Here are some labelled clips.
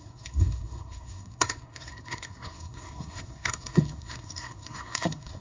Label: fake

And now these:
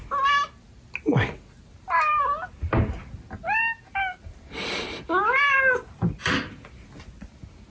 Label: real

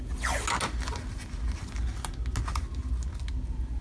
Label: real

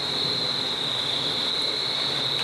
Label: real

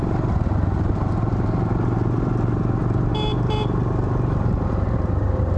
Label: real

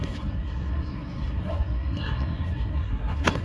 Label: fake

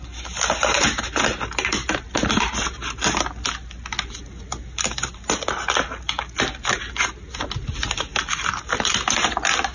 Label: real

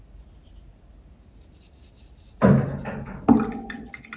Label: real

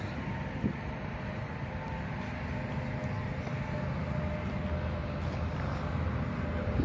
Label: real